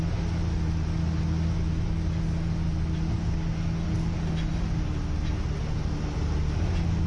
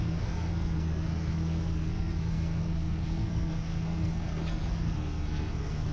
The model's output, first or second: second